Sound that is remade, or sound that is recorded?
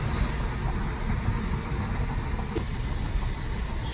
recorded